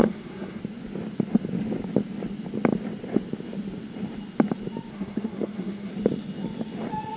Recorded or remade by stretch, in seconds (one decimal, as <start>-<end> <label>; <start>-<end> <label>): 0.0-0.6 remade; 0.6-4.9 recorded; 4.9-5.9 remade; 5.9-7.2 recorded